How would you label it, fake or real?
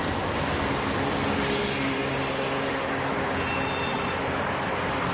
real